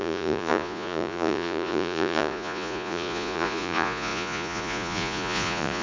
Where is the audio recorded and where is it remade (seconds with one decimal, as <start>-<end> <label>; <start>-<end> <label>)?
0.0-5.8 remade